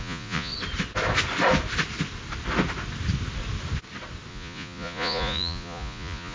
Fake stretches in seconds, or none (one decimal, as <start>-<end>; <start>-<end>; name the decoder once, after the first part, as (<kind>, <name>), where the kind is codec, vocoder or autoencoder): 0.0-0.5 (vocoder, Vocos); 4.3-6.3